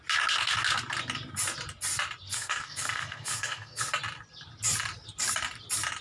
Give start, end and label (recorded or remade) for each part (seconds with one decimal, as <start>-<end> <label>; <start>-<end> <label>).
0.0-2.3 recorded; 2.3-3.8 remade; 3.8-6.0 recorded